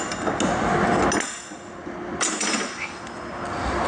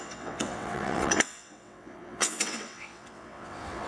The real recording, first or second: first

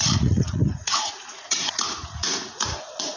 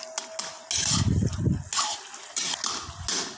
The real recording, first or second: second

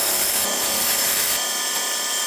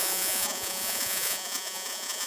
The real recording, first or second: first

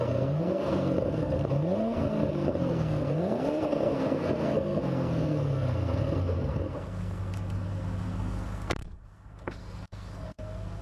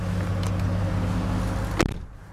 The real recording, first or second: second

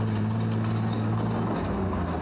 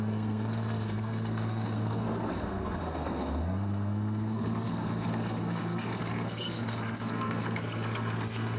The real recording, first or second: first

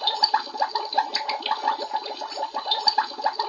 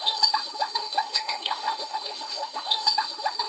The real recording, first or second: first